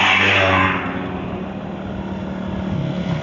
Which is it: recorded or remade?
recorded